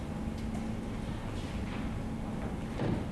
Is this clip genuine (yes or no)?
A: yes